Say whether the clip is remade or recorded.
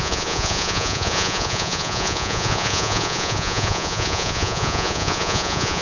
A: remade